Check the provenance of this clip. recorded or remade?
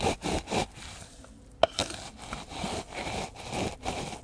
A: recorded